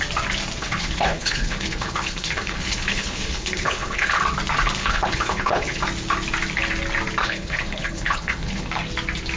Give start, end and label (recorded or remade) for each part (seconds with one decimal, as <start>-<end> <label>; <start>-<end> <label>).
0.0-0.6 recorded; 0.6-4.2 remade; 4.2-4.8 recorded; 4.8-5.8 remade; 5.8-7.2 recorded; 7.2-8.7 remade; 8.7-9.4 recorded